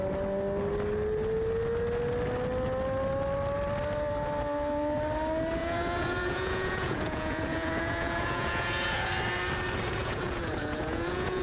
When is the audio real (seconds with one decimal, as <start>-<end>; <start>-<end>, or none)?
0.0-5.6; 9.1-10.0

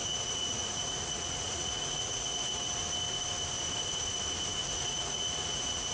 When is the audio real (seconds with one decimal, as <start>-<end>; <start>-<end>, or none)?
2.8-4.6

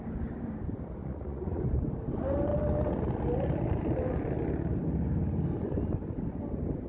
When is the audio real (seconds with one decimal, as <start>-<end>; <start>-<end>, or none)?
0.0-1.0; 1.6-6.9

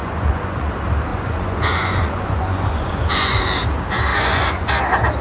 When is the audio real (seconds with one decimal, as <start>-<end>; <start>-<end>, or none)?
0.7-1.1; 3.4-4.1; 4.7-5.2

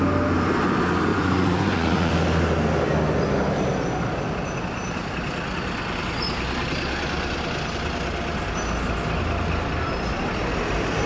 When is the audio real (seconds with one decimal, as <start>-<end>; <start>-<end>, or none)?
0.0-1.1; 2.1-11.1

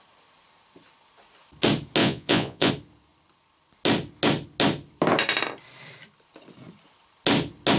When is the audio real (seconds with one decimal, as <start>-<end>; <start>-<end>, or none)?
0.0-2.0; 2.7-7.8

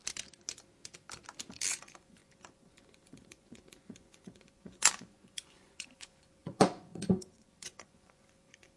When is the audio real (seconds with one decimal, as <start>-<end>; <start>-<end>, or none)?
0.0-1.7